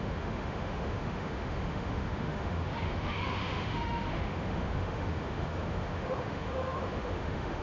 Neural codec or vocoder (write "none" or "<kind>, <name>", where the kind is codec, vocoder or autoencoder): autoencoder, DAC-VAE